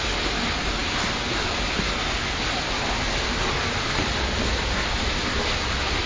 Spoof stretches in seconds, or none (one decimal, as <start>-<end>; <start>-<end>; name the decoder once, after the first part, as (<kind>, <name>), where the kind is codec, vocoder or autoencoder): none